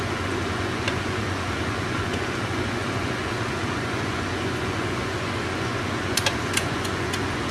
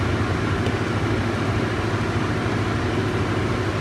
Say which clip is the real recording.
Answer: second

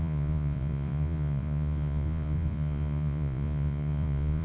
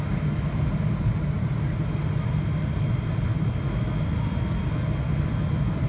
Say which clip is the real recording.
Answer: second